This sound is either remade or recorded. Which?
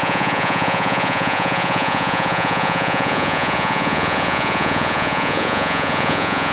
remade